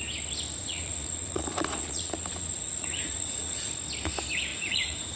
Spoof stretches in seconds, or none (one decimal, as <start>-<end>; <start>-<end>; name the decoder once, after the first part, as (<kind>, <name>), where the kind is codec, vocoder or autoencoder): 0.6-3.7 (vocoder, Vocos); 4.5-5.2

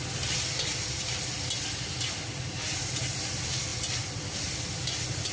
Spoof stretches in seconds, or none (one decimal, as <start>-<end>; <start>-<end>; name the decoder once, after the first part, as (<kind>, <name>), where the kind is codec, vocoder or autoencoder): none

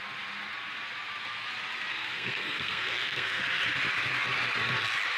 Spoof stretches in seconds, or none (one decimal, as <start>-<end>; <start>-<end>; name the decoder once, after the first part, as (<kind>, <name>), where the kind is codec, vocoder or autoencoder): 1.9-3.4 (codec, SNAC)

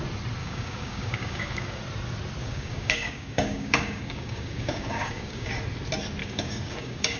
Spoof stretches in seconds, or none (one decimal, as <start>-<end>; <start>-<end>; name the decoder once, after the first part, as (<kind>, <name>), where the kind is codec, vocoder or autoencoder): 0.4-1.8 (codec, DAC); 2.4-5.5; 6.2-7.2

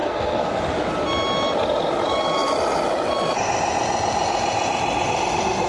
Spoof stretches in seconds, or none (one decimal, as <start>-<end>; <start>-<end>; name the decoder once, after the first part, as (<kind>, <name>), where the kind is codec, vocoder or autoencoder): 0.0-0.6 (codec, SNAC)

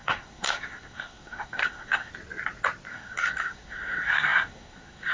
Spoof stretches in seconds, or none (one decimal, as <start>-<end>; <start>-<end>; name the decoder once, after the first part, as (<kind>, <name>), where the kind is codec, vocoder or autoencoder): 0.0-2.1 (codec, SNAC); 2.9-5.1

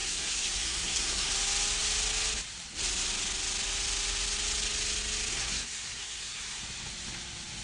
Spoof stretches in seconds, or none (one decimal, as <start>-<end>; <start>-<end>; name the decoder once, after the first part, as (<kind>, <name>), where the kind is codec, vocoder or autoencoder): 0.0-1.3 (codec, SNAC); 5.3-6.6

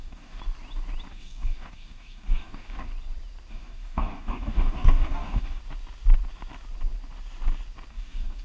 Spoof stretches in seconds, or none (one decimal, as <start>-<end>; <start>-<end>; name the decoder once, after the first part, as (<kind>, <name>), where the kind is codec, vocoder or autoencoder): 0.0-0.4 (codec, DAC); 1.1-2.9; 3.5-5.6; 7.9-8.4